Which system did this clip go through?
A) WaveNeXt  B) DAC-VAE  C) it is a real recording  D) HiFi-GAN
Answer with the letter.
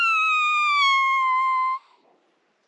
C